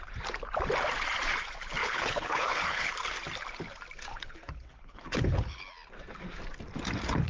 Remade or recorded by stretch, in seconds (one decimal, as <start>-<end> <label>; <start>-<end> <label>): 0.0-1.8 recorded; 1.8-2.9 remade; 2.9-4.1 recorded; 4.1-5.6 remade; 5.6-7.3 recorded

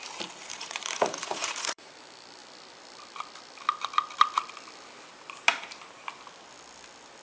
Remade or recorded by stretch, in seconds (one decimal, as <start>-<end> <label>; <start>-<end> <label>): 0.0-0.5 recorded; 0.5-1.9 remade; 1.9-7.2 recorded